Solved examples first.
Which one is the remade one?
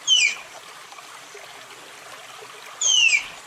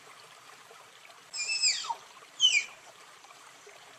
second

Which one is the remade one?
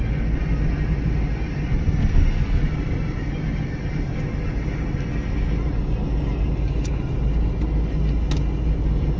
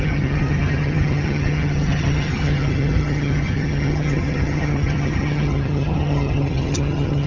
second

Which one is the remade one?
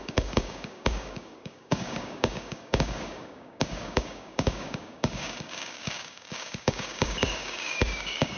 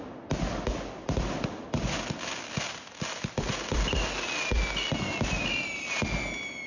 first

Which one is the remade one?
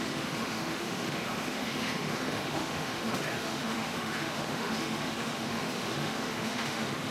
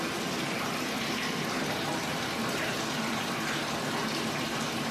first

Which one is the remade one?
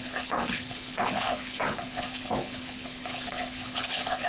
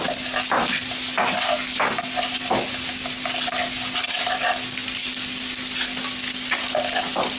first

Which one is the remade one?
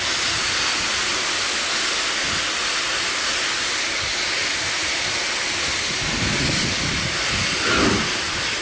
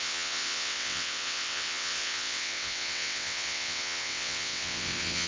second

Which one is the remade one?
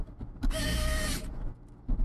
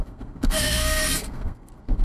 second